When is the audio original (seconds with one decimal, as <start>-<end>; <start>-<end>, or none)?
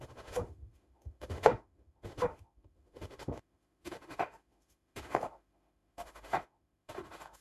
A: none